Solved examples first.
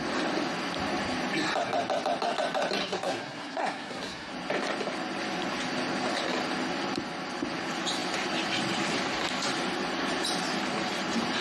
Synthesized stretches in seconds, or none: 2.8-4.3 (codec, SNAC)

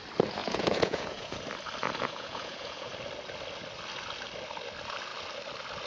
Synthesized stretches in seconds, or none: 0.4-1.4 (vocoder, Vocos); 1.8-2.9

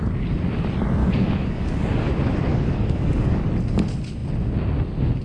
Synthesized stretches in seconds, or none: 1.0-2.1 (codec, DAC); 2.5-3.5

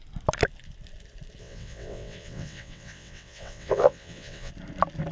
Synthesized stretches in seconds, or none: 1.4-4.5 (vocoder, WaveNeXt)